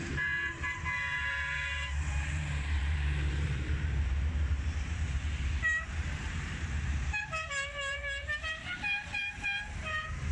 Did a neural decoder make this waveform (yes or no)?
yes